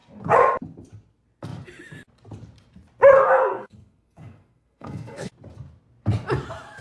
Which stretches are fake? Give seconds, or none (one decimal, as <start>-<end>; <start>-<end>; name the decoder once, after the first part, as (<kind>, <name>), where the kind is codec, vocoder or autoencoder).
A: 3.5-5.3 (codec, SNAC)